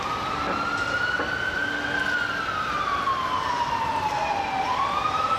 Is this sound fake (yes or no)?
no